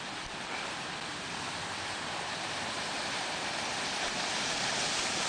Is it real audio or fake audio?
fake